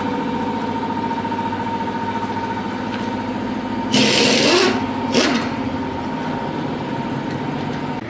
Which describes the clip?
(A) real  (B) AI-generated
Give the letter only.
A